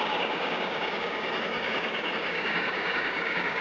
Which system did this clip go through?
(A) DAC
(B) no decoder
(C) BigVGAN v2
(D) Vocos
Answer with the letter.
A